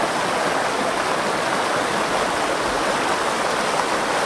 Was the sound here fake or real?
real